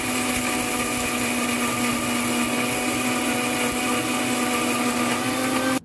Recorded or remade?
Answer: recorded